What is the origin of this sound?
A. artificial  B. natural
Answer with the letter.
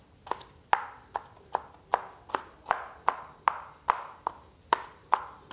B